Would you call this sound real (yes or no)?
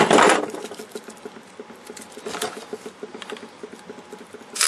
yes